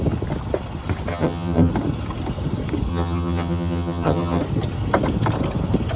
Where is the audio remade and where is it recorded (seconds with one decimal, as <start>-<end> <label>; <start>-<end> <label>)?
0.0-1.1 recorded; 1.1-1.7 remade; 1.7-2.9 recorded; 2.9-4.4 remade; 4.4-6.0 recorded